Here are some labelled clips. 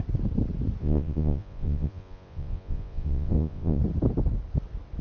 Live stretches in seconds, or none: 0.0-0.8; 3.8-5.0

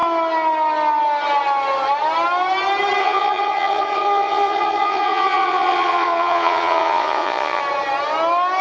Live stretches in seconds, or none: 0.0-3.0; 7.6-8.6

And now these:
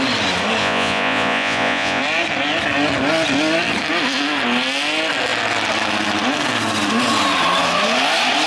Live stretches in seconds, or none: 0.0-0.6; 2.0-8.5